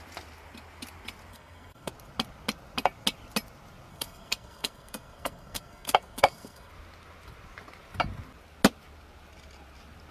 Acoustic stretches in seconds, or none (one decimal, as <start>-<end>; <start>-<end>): 0.0-1.3; 1.9-3.9; 6.7-10.1